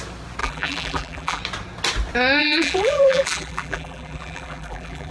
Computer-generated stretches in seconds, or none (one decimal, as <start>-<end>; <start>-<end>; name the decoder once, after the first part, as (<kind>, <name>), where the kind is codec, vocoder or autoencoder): 0.4-1.4 (vocoder, BigVGAN v2); 2.4-5.1